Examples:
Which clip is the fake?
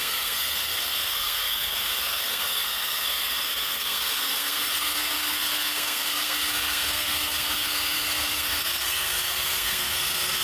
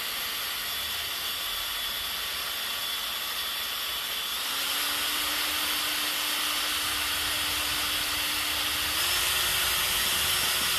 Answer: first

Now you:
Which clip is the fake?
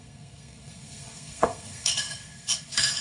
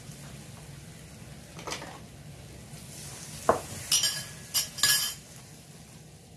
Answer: first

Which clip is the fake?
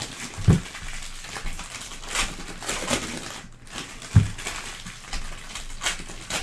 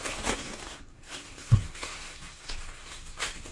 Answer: second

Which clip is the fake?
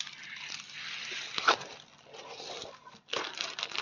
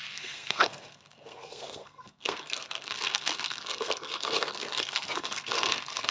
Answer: second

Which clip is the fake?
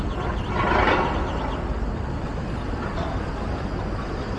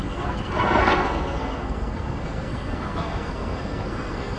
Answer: second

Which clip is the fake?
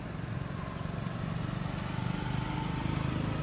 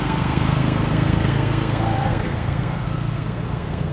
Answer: second